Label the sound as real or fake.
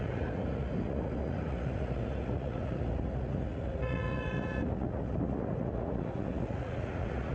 fake